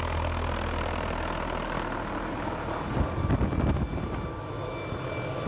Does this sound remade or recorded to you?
recorded